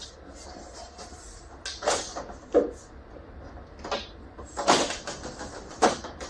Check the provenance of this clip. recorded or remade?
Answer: recorded